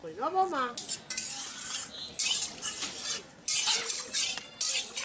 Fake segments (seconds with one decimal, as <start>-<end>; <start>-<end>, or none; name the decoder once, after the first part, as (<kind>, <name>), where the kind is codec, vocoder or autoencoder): none